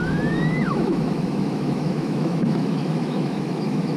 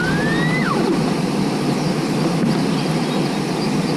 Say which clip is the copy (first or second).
first